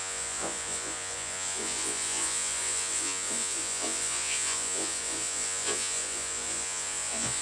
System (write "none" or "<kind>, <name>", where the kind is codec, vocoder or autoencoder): vocoder, Vocos